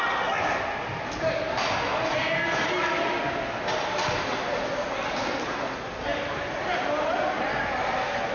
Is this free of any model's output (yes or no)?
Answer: yes